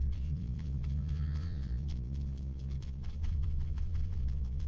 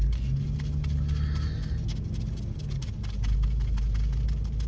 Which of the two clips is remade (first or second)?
first